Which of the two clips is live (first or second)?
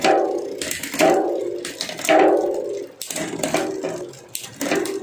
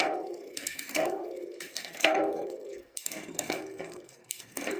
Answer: first